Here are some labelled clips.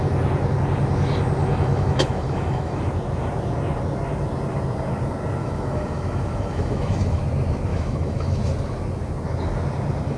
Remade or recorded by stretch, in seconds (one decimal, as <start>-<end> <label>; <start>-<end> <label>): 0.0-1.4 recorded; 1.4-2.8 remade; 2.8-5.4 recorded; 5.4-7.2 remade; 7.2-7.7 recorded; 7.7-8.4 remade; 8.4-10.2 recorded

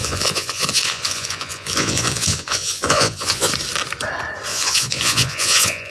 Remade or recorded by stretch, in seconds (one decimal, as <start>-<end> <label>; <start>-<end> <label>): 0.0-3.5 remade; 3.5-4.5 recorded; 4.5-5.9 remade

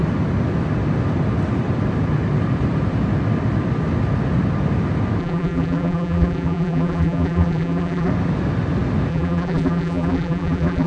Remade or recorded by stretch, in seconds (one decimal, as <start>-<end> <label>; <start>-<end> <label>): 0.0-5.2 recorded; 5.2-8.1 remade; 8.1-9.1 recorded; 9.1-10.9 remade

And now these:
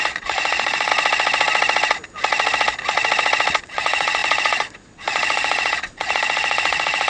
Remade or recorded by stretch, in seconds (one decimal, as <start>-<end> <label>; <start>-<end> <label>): 0.0-0.9 remade; 0.9-3.6 recorded; 3.6-7.1 remade

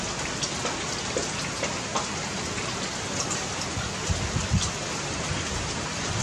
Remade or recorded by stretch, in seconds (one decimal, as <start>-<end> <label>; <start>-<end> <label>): 0.0-6.2 recorded